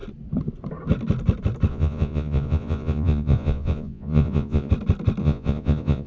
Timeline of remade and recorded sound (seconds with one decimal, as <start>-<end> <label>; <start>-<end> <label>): 0.0-1.7 recorded; 1.7-4.7 remade; 4.7-5.2 recorded; 5.2-6.1 remade